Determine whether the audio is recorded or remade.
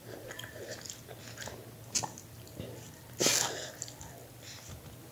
recorded